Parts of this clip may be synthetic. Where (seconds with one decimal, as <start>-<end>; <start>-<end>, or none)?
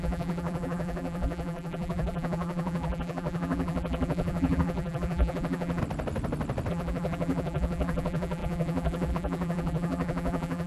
0.0-5.8; 6.7-10.7